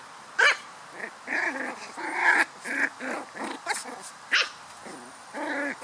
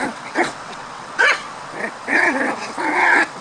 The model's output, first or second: second